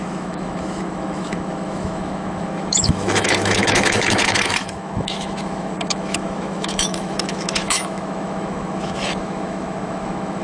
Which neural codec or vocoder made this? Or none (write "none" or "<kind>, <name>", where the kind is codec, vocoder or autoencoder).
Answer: autoencoder, DAC-VAE